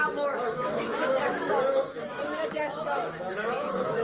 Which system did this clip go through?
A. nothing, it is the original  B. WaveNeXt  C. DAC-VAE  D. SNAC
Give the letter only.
C